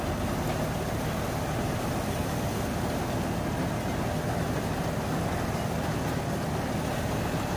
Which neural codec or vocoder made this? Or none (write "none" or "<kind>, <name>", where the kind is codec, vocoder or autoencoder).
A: none